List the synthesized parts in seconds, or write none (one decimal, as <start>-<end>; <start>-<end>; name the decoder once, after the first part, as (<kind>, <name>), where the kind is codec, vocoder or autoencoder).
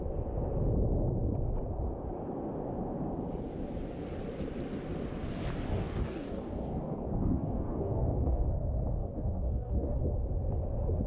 5.7-8.5 (codec, DAC); 9.0-10.0